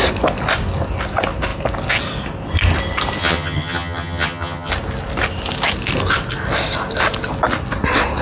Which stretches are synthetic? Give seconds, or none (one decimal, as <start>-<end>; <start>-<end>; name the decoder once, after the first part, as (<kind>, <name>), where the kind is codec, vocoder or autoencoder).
3.2-4.7 (vocoder, HiFi-GAN)